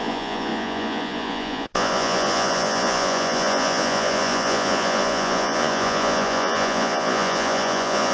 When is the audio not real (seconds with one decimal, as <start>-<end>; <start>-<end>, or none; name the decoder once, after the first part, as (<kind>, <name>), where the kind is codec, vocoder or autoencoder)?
0.0-8.1 (vocoder, Vocos)